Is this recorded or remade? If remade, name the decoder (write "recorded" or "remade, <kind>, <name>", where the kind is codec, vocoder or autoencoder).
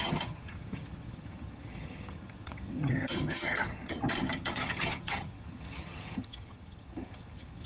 remade, vocoder, HiFi-GAN